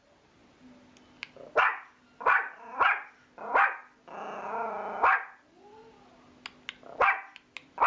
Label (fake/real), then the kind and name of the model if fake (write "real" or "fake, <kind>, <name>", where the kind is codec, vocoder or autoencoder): real